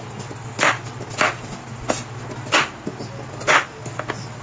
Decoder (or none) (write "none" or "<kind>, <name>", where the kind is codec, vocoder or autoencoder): none